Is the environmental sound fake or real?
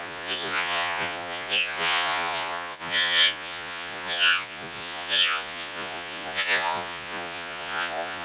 fake